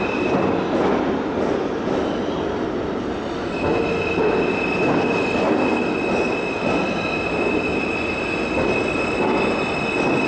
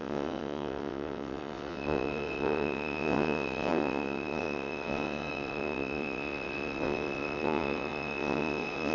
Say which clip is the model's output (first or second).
second